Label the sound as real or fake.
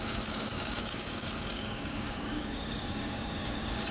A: fake